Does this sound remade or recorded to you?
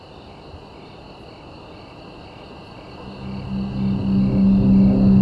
recorded